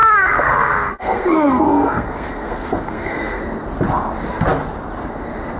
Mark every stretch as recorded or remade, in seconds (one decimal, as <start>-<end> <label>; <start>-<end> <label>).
0.0-3.4 remade; 3.4-5.6 recorded